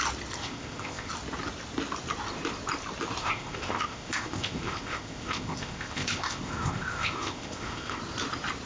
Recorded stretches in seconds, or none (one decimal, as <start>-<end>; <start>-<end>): 0.0-0.4; 1.1-3.2; 8.0-8.7

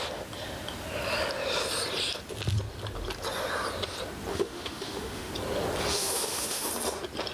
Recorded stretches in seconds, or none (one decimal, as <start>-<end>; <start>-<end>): 0.0-4.3; 5.3-5.9; 6.7-7.3